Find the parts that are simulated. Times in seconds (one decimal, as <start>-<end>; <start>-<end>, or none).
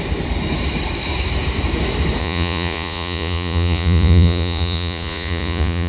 2.2-5.9